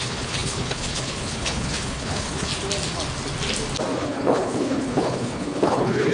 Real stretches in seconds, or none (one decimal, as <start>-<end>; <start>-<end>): 2.5-4.0